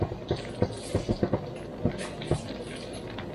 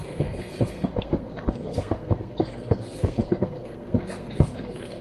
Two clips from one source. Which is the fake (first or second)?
second